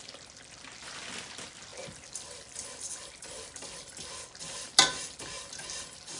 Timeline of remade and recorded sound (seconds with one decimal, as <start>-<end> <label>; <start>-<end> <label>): 0.0-6.2 recorded